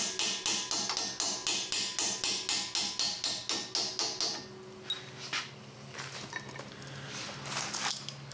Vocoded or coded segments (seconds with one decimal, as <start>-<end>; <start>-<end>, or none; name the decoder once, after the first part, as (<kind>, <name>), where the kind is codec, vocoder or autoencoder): none